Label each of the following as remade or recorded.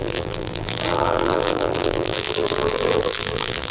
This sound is remade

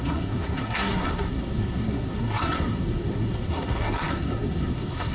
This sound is remade